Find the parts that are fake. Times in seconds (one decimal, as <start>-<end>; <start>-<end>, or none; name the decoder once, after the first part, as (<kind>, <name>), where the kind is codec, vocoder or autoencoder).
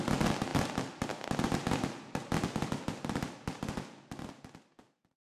none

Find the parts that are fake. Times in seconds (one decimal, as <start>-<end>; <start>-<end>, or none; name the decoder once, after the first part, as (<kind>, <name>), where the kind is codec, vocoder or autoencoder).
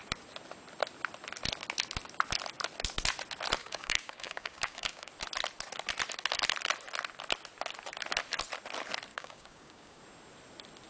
3.6-5.1 (codec, DAC); 9.1-10.0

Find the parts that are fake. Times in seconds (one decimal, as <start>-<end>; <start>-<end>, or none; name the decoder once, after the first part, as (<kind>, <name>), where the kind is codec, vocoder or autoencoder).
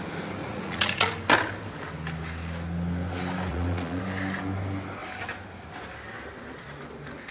0.4-1.1 (vocoder, Vocos); 3.5-4.0